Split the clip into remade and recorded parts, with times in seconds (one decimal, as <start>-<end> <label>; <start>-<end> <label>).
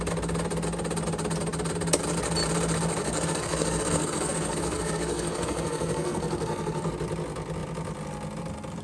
0.0-3.0 recorded; 3.0-6.9 remade; 6.9-8.8 recorded